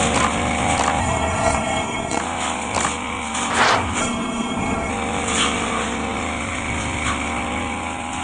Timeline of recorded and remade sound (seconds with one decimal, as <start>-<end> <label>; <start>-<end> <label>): 0.0-1.0 recorded; 1.0-2.2 remade; 2.2-4.0 recorded; 4.0-4.9 remade; 4.9-8.2 recorded

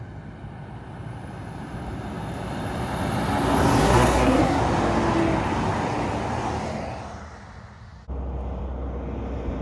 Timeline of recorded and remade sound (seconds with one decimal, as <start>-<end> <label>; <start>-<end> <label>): 0.0-3.8 recorded; 3.8-4.6 remade; 4.6-9.6 recorded

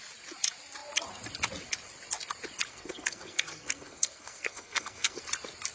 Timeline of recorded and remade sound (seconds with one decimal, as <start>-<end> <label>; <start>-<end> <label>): 0.0-2.7 recorded; 2.7-5.2 remade; 5.2-5.7 recorded

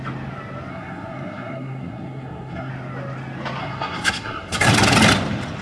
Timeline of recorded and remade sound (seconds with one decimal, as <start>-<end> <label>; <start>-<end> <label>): 0.0-0.7 recorded; 0.7-2.7 remade; 2.7-3.6 recorded; 3.6-4.7 remade; 4.7-5.6 recorded

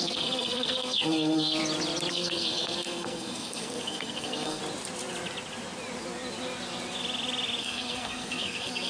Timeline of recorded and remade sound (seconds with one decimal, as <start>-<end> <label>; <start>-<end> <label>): 0.0-1.6 remade; 1.6-2.1 recorded; 2.1-4.6 remade; 4.6-7.6 recorded; 7.6-8.9 remade

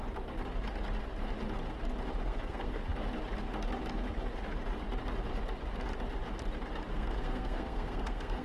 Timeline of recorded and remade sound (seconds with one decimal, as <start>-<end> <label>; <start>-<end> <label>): 0.0-2.2 recorded; 2.2-2.8 remade; 2.8-6.9 recorded; 6.9-8.4 remade